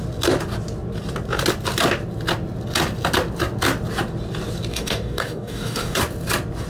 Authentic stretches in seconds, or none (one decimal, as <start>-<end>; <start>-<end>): 0.0-4.7; 6.0-6.7